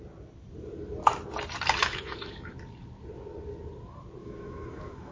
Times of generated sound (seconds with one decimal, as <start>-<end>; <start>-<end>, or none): 1.8-2.5; 4.2-5.1